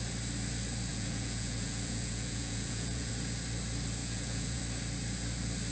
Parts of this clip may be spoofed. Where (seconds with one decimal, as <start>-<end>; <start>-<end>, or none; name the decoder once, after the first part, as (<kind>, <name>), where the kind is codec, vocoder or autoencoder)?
0.9-3.1 (vocoder, Vocos); 4.0-4.6